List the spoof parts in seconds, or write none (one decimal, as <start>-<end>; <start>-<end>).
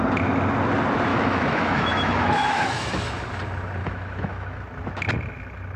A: 1.1-2.9; 3.8-4.6